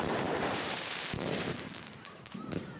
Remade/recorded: remade